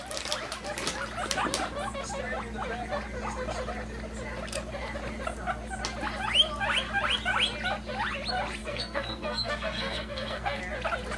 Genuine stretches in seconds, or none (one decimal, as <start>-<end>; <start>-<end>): 0.0-8.6; 10.6-11.2